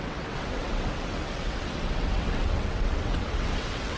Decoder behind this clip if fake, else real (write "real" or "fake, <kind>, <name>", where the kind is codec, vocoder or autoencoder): fake, vocoder, WaveNeXt